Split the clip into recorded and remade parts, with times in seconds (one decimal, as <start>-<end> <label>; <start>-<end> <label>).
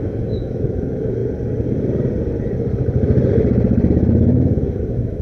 0.0-1.2 remade; 1.2-4.3 recorded; 4.3-5.2 remade